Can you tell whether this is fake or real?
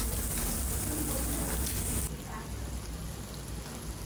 real